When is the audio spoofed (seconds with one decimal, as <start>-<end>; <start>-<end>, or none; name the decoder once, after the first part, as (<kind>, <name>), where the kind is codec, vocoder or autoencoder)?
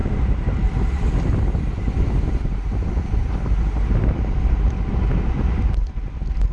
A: none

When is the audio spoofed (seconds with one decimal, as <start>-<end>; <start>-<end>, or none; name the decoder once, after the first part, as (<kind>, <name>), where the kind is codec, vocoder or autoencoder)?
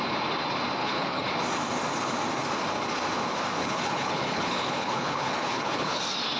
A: 0.8-1.3 (codec, HILCodec); 3.6-6.0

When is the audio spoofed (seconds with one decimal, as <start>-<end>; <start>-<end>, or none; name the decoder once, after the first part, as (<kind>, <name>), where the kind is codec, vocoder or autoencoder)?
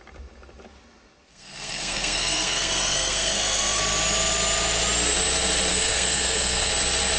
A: 1.3-3.8 (codec, SNAC); 5.7-6.7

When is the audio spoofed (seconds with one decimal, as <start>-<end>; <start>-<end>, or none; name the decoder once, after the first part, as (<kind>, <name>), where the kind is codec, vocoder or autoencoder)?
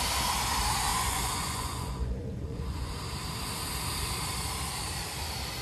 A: 0.9-2.9 (vocoder, Vocos)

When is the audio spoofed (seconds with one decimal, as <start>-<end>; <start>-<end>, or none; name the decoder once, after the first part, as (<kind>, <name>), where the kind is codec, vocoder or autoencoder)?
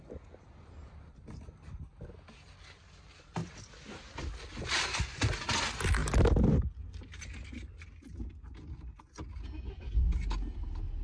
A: none